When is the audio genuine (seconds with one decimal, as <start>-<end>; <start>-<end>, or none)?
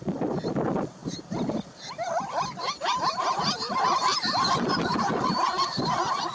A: 0.0-6.3